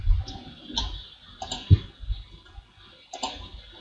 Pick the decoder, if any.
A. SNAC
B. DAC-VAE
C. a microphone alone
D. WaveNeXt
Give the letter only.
C